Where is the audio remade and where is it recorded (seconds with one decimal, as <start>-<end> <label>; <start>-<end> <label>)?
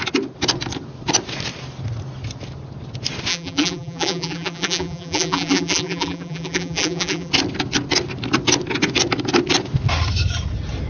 0.0-3.3 recorded; 3.3-7.3 remade; 7.3-10.9 recorded